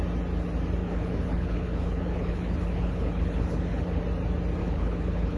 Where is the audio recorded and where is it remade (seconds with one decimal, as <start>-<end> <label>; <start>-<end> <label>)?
0.0-0.8 recorded; 0.8-4.0 remade; 4.0-4.6 recorded; 4.6-5.4 remade